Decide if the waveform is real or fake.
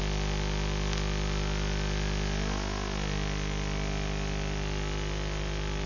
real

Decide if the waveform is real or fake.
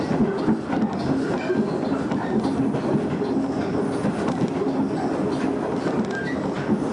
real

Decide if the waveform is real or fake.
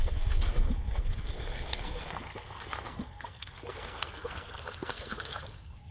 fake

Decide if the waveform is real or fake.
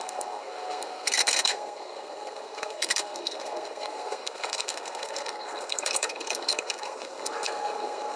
fake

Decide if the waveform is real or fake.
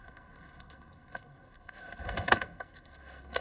fake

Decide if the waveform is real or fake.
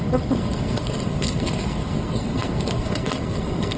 fake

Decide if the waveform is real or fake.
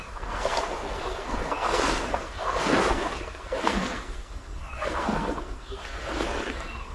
fake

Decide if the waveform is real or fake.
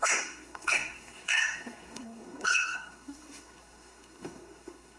fake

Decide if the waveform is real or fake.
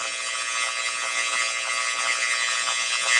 real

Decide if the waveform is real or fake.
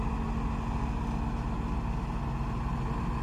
real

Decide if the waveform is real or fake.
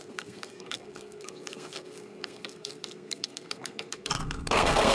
fake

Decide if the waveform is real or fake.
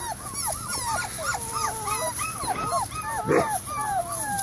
real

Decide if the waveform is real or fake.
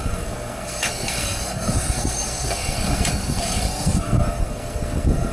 fake